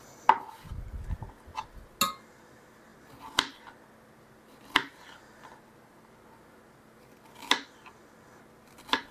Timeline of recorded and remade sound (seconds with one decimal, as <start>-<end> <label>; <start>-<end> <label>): 0.0-9.1 recorded